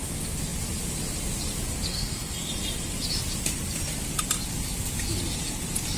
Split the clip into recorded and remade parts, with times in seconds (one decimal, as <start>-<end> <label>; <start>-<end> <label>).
0.0-1.9 recorded; 1.9-2.5 remade; 2.5-6.0 recorded